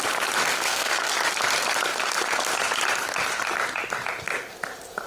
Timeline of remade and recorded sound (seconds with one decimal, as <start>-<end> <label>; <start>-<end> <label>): 0.0-0.5 recorded; 0.5-1.1 remade; 1.1-5.1 recorded